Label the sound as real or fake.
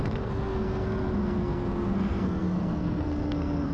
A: fake